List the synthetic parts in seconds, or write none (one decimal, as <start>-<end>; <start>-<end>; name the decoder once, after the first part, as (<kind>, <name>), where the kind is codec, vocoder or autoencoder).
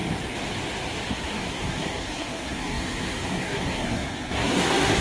1.1-5.0 (codec, SNAC)